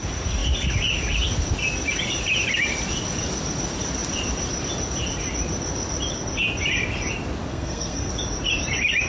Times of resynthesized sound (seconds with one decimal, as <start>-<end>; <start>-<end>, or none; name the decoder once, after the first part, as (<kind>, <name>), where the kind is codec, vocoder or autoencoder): 7.5-8.1 (codec, SNAC)